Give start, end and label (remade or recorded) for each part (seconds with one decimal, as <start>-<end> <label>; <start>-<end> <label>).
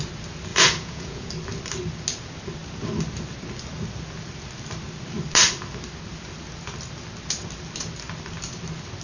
0.0-0.5 recorded; 0.5-1.3 remade; 1.3-9.0 recorded